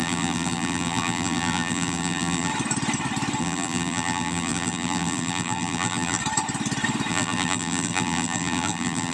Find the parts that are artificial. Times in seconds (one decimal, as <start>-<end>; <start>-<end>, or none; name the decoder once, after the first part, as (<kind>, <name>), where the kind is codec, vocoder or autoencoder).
0.0-2.5 (vocoder, BigVGAN v2); 3.4-6.2; 7.1-9.1